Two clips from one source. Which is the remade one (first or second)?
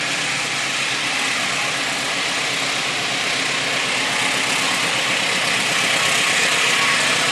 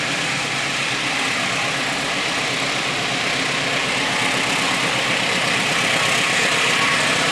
second